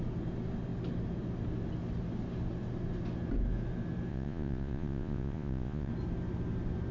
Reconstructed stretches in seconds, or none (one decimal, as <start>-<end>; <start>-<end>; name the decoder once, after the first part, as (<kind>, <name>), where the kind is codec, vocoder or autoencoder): 4.1-5.9 (vocoder, Vocos)